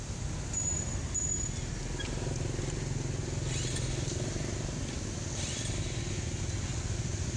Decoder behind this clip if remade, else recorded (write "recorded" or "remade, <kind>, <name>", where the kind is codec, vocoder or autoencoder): recorded